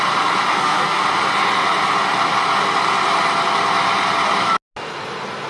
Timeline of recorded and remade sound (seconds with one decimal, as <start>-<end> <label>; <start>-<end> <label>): 0.0-0.5 recorded; 0.5-1.0 remade; 1.0-5.5 recorded